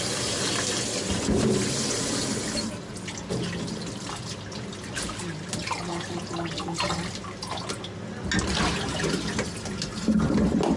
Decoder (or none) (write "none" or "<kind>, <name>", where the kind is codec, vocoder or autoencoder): none